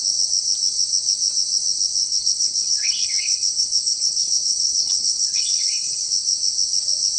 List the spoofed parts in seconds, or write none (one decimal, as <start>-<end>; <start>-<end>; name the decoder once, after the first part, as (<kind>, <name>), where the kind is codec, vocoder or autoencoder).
2.0-6.0 (codec, HILCodec)